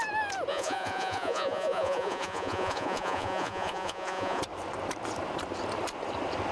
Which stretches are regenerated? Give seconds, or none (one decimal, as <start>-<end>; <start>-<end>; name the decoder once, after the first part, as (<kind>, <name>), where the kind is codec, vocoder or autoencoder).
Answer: 0.5-4.4 (vocoder, Vocos)